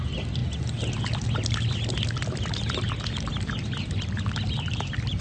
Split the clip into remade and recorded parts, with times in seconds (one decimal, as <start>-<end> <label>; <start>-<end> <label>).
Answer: 0.0-5.2 recorded